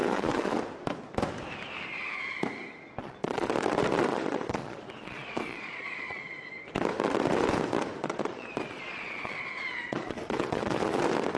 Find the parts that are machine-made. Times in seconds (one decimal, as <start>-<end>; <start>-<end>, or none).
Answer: 0.0-0.6; 3.0-3.5; 4.1-6.5; 8.0-11.0